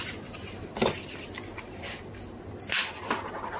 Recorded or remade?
recorded